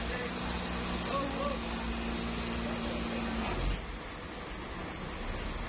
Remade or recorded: recorded